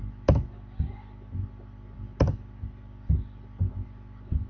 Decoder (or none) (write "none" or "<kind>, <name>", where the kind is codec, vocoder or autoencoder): none